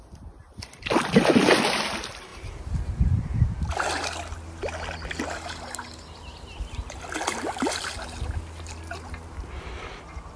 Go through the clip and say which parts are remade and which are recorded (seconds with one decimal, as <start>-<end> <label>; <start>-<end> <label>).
0.0-2.3 recorded; 2.3-3.5 remade; 3.5-10.4 recorded